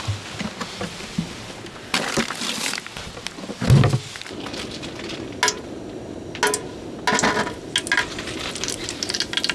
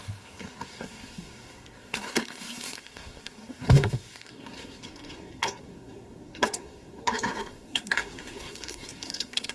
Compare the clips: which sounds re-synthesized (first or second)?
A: second